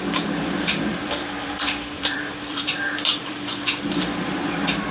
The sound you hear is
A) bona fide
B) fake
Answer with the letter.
B